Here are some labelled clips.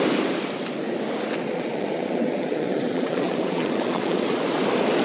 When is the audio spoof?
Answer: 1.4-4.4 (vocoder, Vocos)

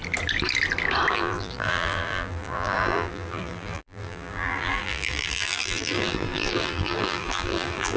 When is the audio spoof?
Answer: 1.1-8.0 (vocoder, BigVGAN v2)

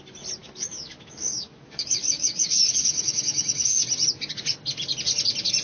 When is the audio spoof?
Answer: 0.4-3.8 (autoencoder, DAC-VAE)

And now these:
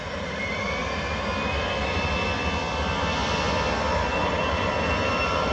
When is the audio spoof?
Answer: 0.0-0.8 (vocoder, BigVGAN v2); 4.1-5.5

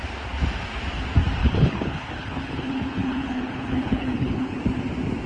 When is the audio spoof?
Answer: 1.4-4.6 (codec, HILCodec)

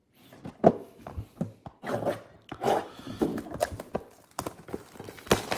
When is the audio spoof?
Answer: 0.7-1.1 (autoencoder, DAC-VAE); 2.5-3.3